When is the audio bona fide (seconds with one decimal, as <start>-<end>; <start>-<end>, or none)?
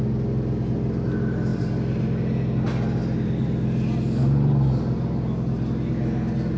0.0-1.5; 2.0-6.6